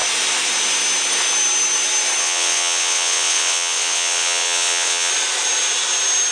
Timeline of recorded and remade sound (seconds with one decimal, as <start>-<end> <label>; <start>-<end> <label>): 0.0-2.2 recorded; 2.2-5.1 remade; 5.1-6.3 recorded